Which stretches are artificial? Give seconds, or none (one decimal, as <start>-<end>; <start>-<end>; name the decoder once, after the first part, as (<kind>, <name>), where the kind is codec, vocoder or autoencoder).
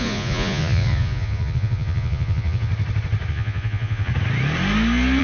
0.0-2.7 (vocoder, Vocos); 3.3-4.1